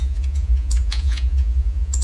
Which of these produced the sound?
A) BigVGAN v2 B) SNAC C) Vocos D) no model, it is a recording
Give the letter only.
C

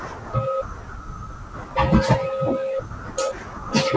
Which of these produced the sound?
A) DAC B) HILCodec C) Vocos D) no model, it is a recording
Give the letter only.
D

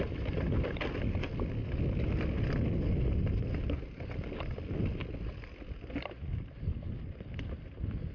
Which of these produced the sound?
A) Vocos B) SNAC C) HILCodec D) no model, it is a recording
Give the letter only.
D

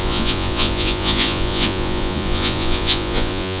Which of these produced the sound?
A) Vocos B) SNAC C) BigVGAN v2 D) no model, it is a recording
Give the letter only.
A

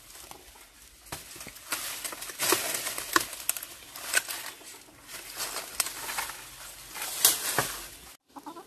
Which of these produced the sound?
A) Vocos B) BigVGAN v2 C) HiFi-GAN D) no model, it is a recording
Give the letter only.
D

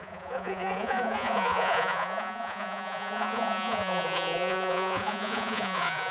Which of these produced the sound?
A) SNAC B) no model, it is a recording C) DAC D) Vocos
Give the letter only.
D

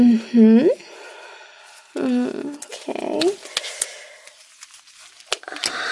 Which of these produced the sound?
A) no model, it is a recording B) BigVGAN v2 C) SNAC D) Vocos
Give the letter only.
A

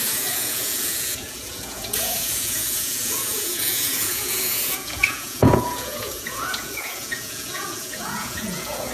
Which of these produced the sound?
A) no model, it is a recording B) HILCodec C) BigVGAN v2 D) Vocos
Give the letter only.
D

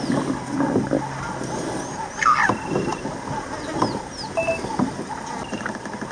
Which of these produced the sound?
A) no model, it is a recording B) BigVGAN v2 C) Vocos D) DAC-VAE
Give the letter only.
A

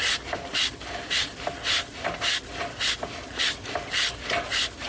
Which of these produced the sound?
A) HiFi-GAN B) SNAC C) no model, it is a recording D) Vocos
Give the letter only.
C